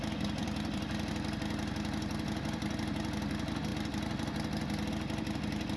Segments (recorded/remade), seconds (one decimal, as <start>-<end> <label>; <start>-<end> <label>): 0.0-0.4 recorded; 0.4-1.1 remade; 1.1-5.8 recorded